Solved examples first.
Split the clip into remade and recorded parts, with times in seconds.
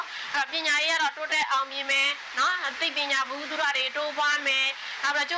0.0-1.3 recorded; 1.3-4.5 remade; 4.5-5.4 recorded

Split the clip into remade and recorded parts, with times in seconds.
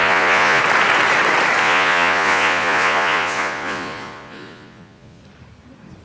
0.0-0.6 remade; 0.6-1.6 recorded; 1.6-5.2 remade; 5.2-6.0 recorded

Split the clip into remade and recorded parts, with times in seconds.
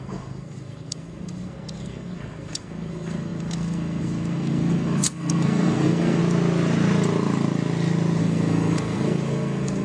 0.0-6.2 remade; 6.2-8.2 recorded; 8.2-9.8 remade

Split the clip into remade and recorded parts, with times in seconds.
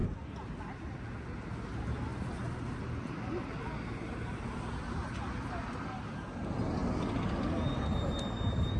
0.0-8.8 recorded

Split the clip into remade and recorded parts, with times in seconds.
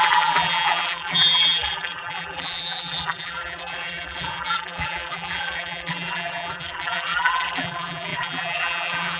0.0-9.2 remade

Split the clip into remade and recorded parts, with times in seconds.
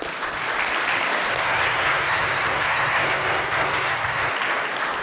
0.0-1.3 recorded; 1.3-4.3 remade; 4.3-5.0 recorded